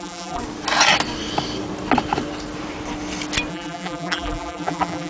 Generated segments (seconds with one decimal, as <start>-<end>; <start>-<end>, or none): 0.0-0.4; 3.5-5.1